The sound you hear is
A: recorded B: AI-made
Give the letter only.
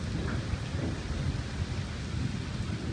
A